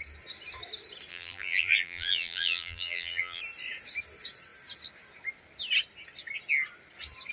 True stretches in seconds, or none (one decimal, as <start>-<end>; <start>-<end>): 0.0-1.1; 3.4-7.3

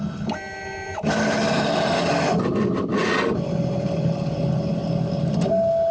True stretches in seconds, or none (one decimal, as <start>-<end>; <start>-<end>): 0.0-5.9

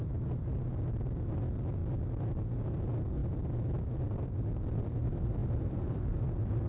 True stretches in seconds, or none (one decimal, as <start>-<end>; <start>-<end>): 0.0-3.2; 4.4-6.7

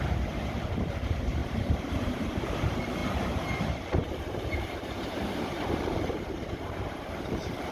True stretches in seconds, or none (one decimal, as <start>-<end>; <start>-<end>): 1.4-1.9